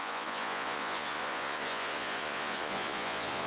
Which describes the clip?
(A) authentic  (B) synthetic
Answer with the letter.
B